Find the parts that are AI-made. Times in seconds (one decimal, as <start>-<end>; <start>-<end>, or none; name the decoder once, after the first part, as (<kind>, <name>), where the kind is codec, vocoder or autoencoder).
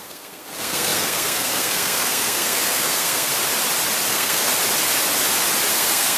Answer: 0.0-3.3 (codec, SNAC); 4.1-4.5; 5.7-6.2